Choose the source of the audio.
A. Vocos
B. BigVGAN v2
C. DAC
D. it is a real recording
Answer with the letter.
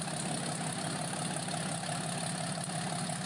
D